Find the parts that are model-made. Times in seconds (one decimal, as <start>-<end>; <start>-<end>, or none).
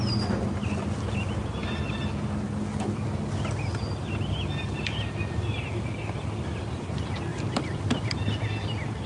7.3-8.1